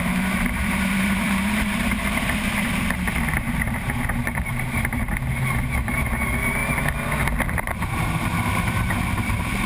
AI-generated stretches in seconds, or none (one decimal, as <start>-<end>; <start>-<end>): 0.0-6.6; 7.5-9.7